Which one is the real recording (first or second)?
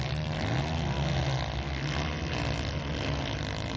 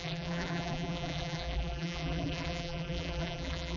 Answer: first